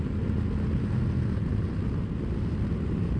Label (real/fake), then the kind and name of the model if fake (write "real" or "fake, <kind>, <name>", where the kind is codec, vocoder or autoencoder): real